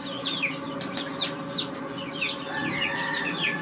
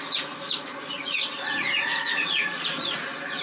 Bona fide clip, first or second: first